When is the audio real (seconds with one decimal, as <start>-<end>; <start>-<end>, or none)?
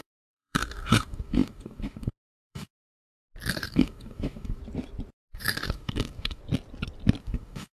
2.7-3.5; 4.6-5.3; 6.4-7.2